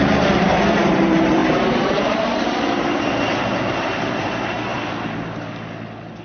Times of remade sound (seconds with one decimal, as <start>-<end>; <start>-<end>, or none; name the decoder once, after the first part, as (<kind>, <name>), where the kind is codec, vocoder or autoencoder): 0.0-4.7 (vocoder, BigVGAN v2)